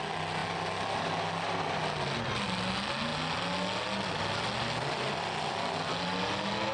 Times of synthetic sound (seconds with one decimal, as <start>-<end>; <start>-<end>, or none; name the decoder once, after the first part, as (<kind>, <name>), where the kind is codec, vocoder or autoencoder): none